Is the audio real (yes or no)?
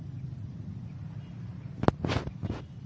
yes